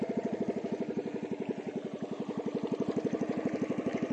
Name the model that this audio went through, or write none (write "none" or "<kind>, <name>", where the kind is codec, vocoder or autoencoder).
none